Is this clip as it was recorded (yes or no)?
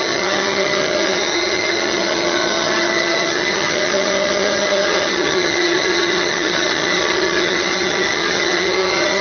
no